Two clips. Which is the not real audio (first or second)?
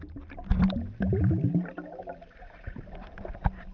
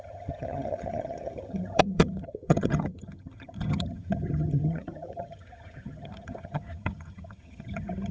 second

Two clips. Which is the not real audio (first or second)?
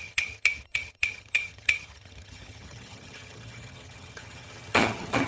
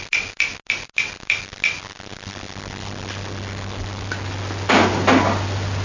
first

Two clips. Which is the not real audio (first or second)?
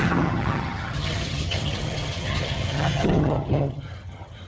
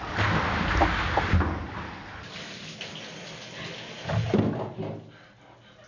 first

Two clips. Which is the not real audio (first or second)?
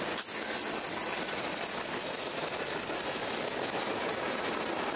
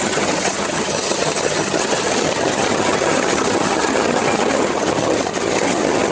second